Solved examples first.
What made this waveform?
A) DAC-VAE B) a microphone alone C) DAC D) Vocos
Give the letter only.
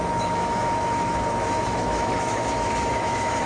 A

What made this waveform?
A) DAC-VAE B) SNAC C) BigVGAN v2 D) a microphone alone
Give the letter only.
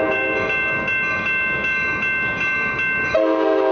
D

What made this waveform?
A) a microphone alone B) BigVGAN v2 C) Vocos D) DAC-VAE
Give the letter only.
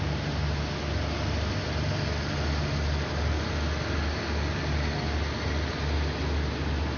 A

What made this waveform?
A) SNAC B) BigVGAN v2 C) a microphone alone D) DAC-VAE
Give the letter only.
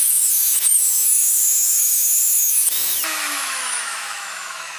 D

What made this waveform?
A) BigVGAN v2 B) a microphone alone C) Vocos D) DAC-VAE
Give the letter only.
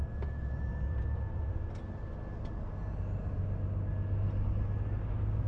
B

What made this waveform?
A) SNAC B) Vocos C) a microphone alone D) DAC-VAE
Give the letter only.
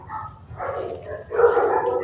C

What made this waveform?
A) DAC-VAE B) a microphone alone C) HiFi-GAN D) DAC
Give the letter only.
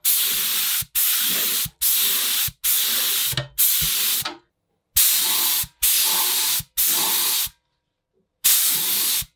B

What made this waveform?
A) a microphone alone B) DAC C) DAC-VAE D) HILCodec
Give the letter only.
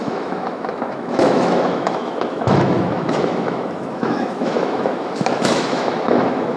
C